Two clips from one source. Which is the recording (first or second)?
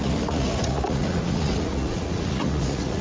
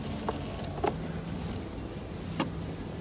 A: second